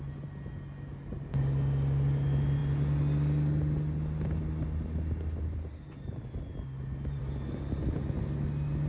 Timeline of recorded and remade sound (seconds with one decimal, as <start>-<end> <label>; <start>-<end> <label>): 0.0-8.9 recorded